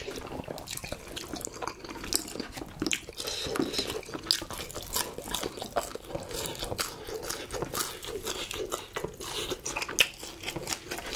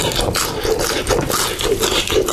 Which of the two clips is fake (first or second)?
second